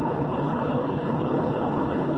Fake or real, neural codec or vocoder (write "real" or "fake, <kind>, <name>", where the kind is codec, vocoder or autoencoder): fake, codec, HILCodec